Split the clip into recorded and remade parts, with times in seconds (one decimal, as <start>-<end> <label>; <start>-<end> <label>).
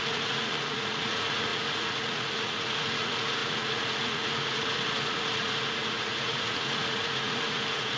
0.0-8.0 remade